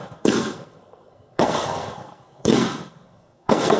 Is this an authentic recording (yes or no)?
no